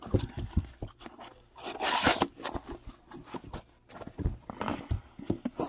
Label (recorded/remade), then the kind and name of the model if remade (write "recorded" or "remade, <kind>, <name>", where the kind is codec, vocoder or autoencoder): recorded